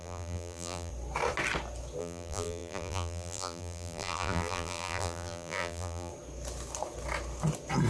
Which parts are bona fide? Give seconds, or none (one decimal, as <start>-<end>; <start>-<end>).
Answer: 0.9-2.0; 6.1-7.9